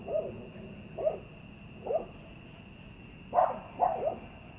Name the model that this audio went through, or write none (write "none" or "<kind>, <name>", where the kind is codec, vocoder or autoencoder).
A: none